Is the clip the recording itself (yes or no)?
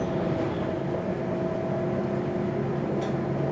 yes